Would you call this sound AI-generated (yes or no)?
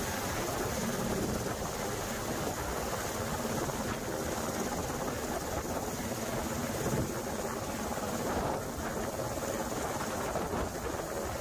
no